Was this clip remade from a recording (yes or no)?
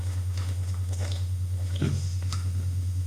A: yes